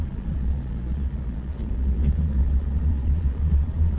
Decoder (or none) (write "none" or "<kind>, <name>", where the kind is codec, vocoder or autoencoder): vocoder, Vocos